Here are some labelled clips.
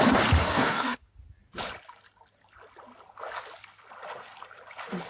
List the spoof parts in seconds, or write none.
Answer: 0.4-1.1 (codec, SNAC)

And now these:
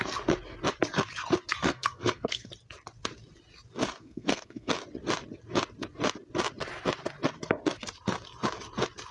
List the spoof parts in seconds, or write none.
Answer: 1.6-2.5 (codec, SNAC); 4.0-4.7

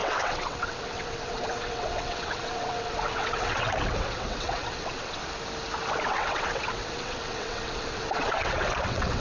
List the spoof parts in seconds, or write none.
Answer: 0.0-5.2 (vocoder, WaveNeXt); 6.0-9.2

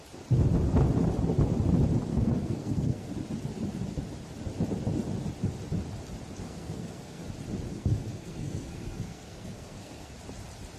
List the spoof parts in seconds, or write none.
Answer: 2.1-3.1 (codec, SNAC); 6.4-7.3; 7.7-10.1

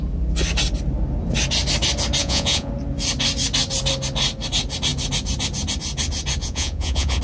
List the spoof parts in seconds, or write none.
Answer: 2.2-2.7 (vocoder, Vocos); 6.4-7.2

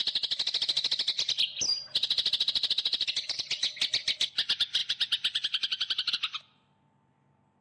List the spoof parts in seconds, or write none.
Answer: none

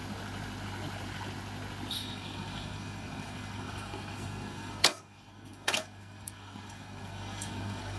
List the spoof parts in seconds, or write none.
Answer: 1.9-8.0 (codec, SNAC)

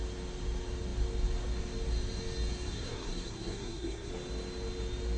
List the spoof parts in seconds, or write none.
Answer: 2.7-4.1 (codec, SNAC)